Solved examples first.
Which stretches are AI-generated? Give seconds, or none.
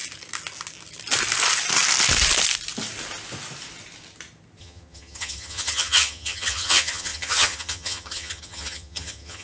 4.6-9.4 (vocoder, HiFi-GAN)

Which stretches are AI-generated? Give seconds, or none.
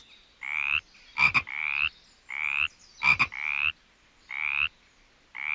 none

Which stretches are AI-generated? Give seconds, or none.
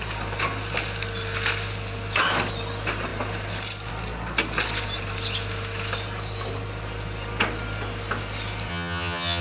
8.7-9.4 (vocoder, HiFi-GAN)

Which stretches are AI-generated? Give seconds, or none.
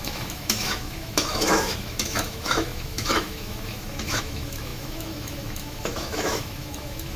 0.0-7.2 (autoencoder, DAC-VAE)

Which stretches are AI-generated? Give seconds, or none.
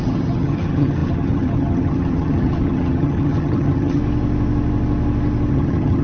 0.0-4.0 (vocoder, HiFi-GAN); 5.5-6.0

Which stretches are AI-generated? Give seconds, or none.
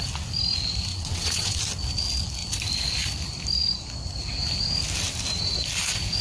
0.9-1.6 (vocoder, WaveNeXt)